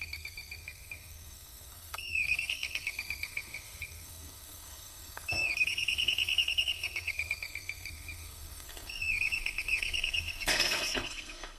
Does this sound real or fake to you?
fake